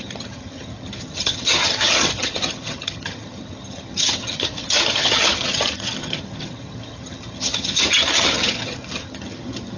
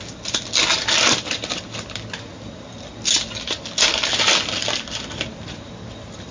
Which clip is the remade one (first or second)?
first